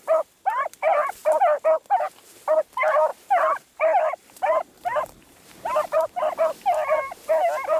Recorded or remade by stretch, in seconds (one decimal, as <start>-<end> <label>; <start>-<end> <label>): 0.0-3.1 recorded; 3.1-6.2 remade; 6.2-7.8 recorded